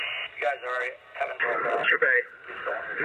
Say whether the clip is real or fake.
real